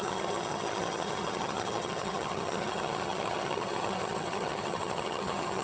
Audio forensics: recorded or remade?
remade